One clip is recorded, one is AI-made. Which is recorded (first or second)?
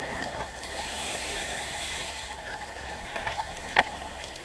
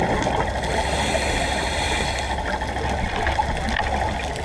second